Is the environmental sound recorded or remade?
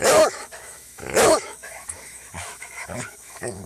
remade